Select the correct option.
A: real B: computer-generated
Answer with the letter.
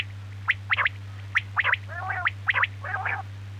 A